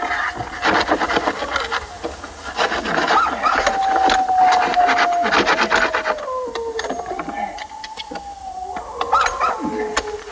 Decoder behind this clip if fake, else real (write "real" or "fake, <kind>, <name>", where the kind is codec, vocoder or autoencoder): real